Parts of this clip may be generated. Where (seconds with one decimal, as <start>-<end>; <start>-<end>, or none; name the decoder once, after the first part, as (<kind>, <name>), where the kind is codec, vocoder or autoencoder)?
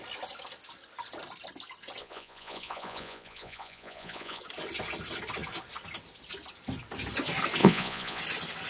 2.0-4.4 (vocoder, Vocos); 7.6-8.2